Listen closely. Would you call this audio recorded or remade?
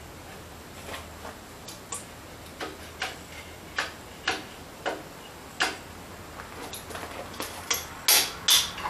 recorded